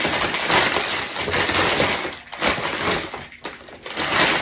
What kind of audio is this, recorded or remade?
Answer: recorded